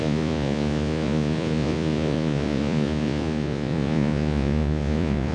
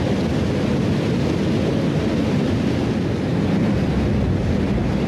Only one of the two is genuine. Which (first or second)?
second